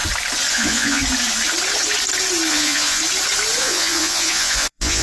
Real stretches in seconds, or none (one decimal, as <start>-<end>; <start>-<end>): 0.0-0.5; 1.0-2.5; 3.0-3.6